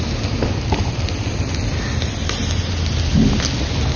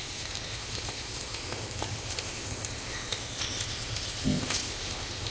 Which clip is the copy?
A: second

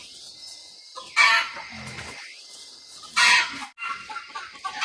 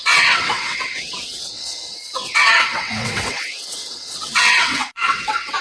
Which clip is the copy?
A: second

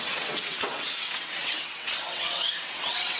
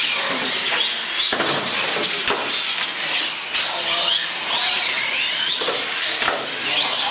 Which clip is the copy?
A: first